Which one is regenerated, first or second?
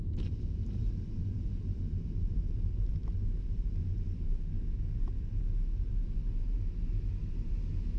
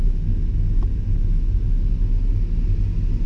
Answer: first